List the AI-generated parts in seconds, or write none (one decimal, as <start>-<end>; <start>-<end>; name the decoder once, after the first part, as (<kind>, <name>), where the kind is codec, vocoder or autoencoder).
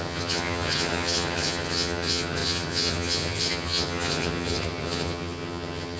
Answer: 0.0-6.0 (vocoder, HiFi-GAN)